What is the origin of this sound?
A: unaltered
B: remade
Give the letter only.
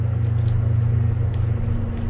A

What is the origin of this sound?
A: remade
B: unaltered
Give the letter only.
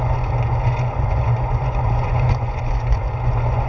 A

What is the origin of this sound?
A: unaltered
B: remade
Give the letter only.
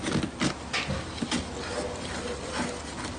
A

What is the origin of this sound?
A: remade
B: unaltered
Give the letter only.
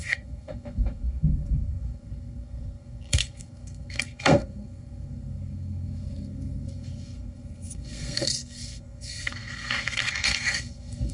A